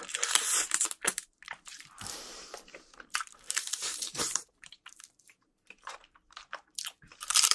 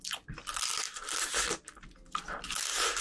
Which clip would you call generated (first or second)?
first